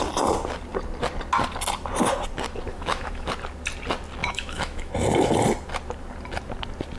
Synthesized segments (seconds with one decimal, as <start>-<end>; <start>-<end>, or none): 2.7-3.3; 4.2-4.9